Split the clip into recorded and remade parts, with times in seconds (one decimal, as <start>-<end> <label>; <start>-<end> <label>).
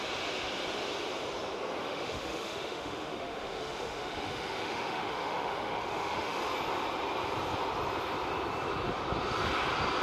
0.0-1.8 recorded; 1.8-6.4 remade; 6.4-10.0 recorded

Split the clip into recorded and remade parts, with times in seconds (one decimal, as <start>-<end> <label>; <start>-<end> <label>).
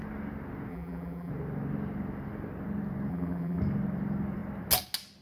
0.0-0.7 recorded; 0.7-1.3 remade; 1.3-3.1 recorded; 3.1-3.6 remade; 3.6-5.2 recorded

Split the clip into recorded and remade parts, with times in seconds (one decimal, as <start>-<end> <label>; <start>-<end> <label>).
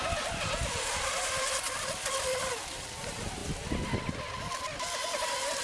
0.0-5.6 recorded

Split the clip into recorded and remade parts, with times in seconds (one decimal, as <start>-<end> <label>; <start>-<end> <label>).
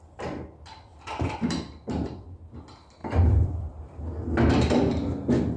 0.0-0.9 recorded; 0.9-2.5 remade; 2.5-3.0 recorded; 3.0-4.0 remade; 4.0-5.6 recorded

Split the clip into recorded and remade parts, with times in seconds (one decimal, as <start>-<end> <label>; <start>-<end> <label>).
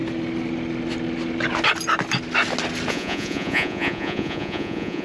0.0-2.9 recorded; 2.9-5.0 remade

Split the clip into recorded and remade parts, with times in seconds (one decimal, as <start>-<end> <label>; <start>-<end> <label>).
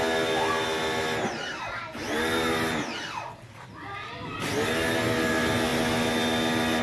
0.0-6.8 recorded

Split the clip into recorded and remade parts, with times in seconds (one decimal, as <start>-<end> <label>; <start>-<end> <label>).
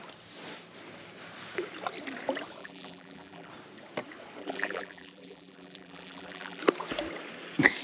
0.0-2.6 recorded; 2.6-3.5 remade; 3.5-4.4 recorded; 4.4-6.6 remade; 6.6-7.8 recorded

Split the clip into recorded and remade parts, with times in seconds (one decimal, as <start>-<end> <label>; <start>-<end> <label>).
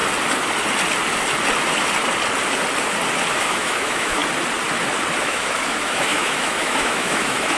0.0-3.3 recorded; 3.3-4.2 remade; 4.2-5.2 recorded; 5.2-7.6 remade